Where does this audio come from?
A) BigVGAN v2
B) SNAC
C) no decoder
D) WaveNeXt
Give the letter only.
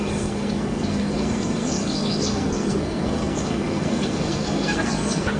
B